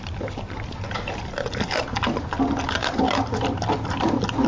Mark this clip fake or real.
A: real